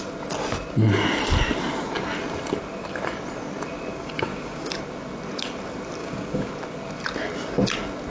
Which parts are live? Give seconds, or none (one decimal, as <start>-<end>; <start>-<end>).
0.0-3.9; 4.7-6.0; 6.5-8.1